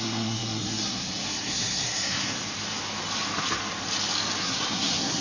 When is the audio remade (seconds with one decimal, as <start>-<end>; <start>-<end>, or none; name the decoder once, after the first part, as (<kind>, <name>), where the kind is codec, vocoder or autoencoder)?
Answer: 0.0-2.4 (codec, SNAC); 4.4-5.2